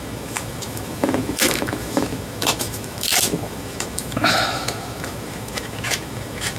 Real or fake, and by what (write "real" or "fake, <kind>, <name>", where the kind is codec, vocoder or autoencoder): fake, autoencoder, DAC-VAE